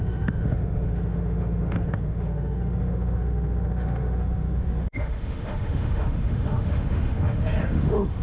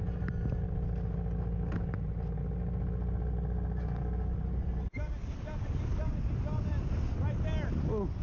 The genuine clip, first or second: second